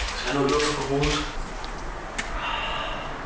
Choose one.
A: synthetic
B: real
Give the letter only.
B